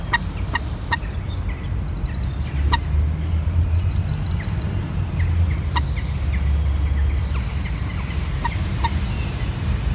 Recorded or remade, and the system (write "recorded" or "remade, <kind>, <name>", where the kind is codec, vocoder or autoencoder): recorded